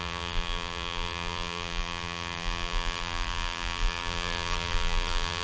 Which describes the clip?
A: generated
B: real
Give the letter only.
A